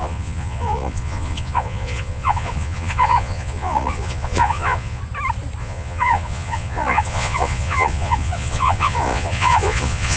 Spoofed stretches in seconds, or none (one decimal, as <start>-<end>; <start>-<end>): 0.0-5.0; 5.6-10.2